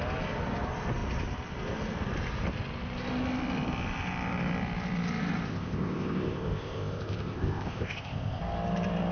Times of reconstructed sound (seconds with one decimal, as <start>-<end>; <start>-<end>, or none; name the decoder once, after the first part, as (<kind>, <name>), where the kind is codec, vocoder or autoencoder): 5.5-8.4 (codec, ZipCodec)